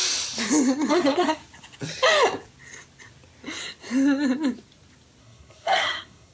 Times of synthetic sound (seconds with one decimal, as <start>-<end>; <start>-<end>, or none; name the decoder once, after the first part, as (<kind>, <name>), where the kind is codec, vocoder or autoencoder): 0.9-1.4 (codec, SNAC); 5.2-6.3